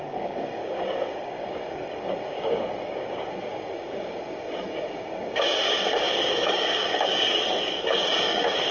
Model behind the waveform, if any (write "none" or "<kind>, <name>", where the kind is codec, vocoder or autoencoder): codec, DAC